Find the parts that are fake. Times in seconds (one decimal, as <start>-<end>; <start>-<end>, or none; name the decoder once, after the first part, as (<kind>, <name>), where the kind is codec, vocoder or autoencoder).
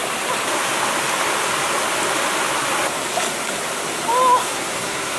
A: 4.4-5.2 (codec, SNAC)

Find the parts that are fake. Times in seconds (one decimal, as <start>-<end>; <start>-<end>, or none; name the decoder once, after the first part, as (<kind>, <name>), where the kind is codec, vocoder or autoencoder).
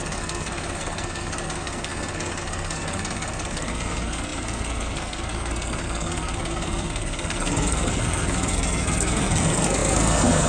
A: 0.0-10.5 (codec, SNAC)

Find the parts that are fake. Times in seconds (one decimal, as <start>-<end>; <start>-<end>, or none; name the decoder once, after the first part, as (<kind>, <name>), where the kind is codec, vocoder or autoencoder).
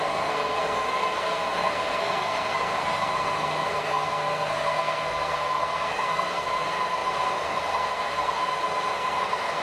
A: 0.0-9.6 (codec, SNAC)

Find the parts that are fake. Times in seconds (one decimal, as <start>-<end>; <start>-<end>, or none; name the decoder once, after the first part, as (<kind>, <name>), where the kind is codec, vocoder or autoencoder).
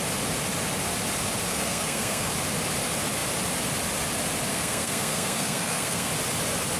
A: 1.5-2.3 (codec, SNAC); 4.5-6.1